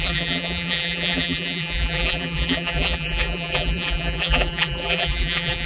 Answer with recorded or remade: remade